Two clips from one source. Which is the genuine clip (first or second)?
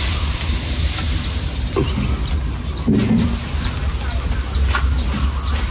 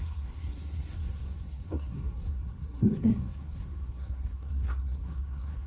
first